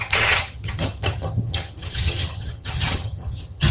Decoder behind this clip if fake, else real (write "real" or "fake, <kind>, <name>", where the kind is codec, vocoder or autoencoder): fake, vocoder, HiFi-GAN